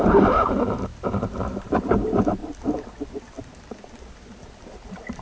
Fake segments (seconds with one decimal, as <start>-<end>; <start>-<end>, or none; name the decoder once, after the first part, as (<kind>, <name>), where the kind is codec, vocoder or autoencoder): 0.0-2.4 (vocoder, BigVGAN v2); 4.1-5.2